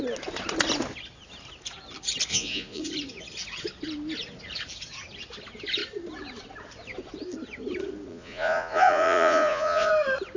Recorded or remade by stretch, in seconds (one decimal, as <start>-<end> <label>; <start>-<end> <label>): 0.0-2.3 recorded; 2.3-2.8 remade; 2.8-8.1 recorded; 8.1-9.9 remade; 9.9-10.4 recorded